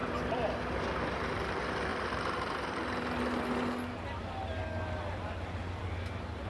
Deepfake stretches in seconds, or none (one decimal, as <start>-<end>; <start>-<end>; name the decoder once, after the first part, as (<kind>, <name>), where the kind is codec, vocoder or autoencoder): 0.0-0.8 (vocoder, BigVGAN v2); 1.9-2.8